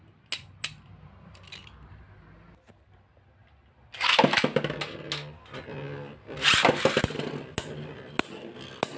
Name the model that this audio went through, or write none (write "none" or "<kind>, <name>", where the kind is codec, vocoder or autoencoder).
none